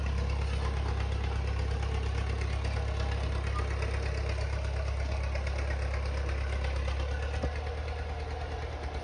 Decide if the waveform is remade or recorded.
recorded